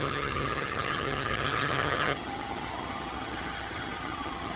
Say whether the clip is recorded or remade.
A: remade